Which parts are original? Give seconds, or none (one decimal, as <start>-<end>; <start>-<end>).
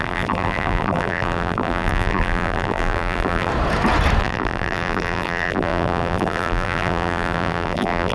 3.5-4.2